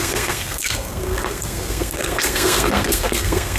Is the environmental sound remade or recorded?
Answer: remade